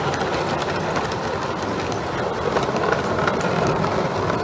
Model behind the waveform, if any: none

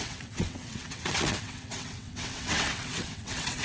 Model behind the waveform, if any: vocoder, WaveNeXt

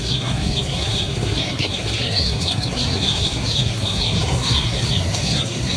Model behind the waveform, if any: codec, SNAC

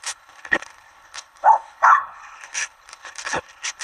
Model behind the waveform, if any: codec, HILCodec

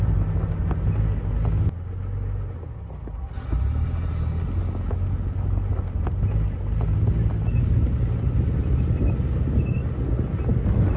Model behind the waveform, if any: none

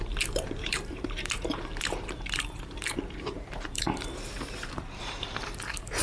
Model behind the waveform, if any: vocoder, BigVGAN v2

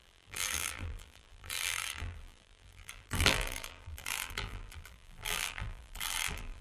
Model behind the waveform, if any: vocoder, BigVGAN v2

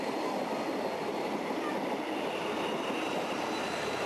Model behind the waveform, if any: none